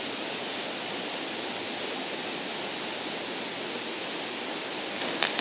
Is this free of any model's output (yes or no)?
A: yes